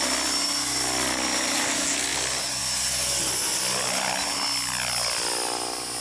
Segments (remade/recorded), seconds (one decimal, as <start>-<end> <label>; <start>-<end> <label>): 0.0-6.0 recorded